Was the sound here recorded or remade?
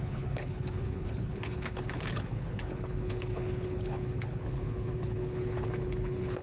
remade